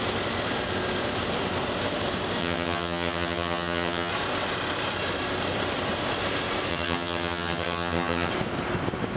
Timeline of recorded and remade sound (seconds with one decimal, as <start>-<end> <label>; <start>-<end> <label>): 0.0-2.4 recorded; 2.4-4.1 remade; 4.1-6.7 recorded; 6.7-8.3 remade; 8.3-9.2 recorded